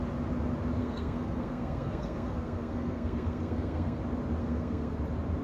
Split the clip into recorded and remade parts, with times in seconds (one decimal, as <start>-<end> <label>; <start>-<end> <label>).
0.0-0.8 recorded; 0.8-4.0 remade; 4.0-4.4 recorded; 4.4-4.9 remade; 4.9-5.4 recorded